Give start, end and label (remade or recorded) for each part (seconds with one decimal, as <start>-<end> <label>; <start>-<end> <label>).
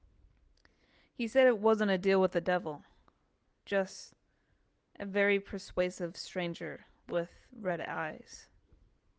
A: 0.0-7.1 recorded; 7.1-7.7 remade; 7.7-9.2 recorded